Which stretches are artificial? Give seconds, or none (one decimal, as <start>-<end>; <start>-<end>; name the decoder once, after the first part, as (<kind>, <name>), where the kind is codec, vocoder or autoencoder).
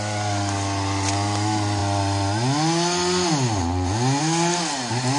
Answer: none